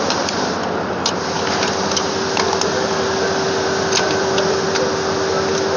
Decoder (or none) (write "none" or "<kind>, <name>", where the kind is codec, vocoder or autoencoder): none